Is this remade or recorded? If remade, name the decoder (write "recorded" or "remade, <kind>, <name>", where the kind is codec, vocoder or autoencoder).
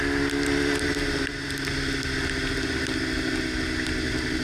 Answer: recorded